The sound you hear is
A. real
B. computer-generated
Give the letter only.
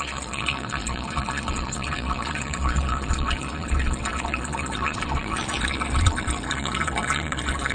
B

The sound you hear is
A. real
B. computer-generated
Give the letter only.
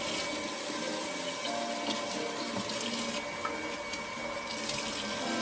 A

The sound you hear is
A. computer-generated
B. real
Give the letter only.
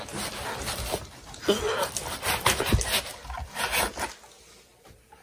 B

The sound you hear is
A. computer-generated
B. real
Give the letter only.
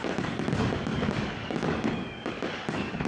A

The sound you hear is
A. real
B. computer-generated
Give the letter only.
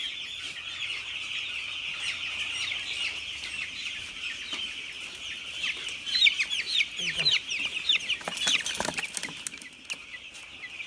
A